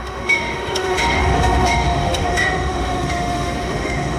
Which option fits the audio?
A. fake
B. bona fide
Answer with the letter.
A